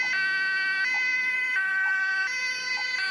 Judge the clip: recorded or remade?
recorded